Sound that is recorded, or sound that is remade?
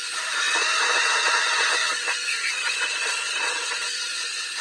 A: remade